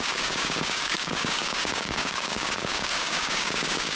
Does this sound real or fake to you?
fake